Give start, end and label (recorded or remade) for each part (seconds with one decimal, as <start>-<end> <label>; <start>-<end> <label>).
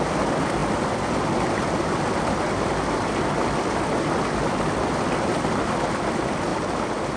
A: 0.0-7.2 recorded